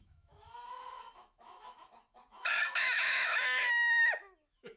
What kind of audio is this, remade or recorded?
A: remade